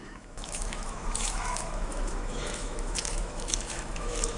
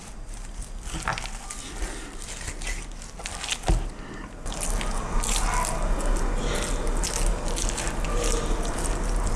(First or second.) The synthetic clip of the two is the first